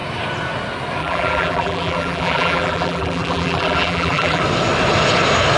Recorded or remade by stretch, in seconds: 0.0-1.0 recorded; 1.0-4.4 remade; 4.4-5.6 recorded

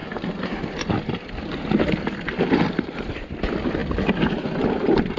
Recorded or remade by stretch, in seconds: 0.0-5.2 recorded

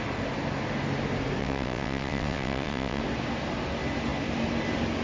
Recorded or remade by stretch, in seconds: 0.0-1.4 recorded; 1.4-3.0 remade; 3.0-5.0 recorded

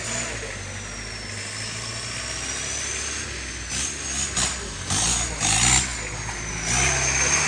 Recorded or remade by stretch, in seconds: 0.0-7.5 recorded

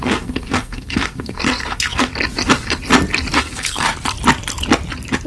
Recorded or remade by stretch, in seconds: 0.0-2.1 remade; 2.1-3.4 recorded; 3.4-3.9 remade; 3.9-5.3 recorded

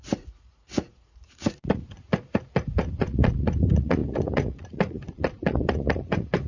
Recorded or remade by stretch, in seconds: 0.0-6.5 remade